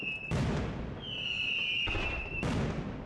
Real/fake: real